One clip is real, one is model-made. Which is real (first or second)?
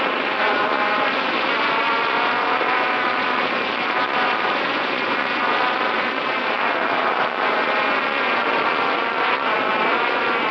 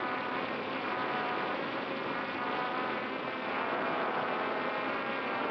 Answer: second